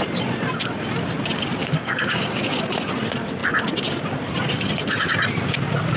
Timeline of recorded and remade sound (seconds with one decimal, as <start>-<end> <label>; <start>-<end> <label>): 0.0-1.6 recorded; 1.6-2.6 remade; 2.6-6.0 recorded

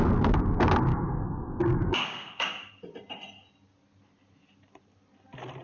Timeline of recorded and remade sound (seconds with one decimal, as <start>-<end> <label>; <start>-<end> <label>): 0.0-0.9 recorded; 0.9-2.7 remade; 2.7-5.6 recorded

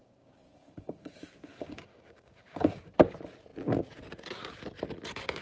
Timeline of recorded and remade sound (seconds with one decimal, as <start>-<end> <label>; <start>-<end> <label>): 0.0-2.9 remade; 2.9-5.4 recorded

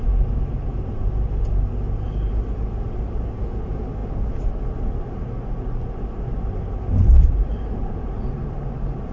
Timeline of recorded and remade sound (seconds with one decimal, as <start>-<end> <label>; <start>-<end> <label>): 0.0-9.1 recorded

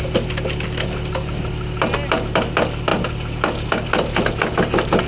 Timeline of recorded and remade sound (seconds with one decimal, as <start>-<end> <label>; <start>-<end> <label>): 0.0-5.1 recorded